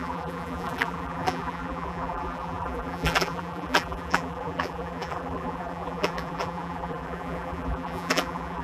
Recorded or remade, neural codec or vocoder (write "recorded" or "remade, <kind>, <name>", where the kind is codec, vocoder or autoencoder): remade, vocoder, BigVGAN v2